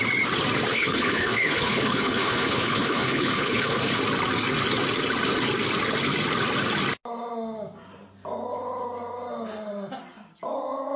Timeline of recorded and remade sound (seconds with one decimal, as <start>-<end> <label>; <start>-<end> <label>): 0.0-0.7 recorded; 0.7-4.0 remade; 4.0-11.0 recorded